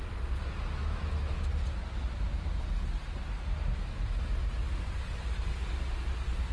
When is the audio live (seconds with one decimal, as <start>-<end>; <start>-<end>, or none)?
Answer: 0.0-0.8; 1.5-6.5